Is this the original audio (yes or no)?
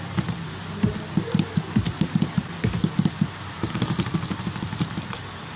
yes